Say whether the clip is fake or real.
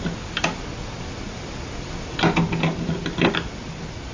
real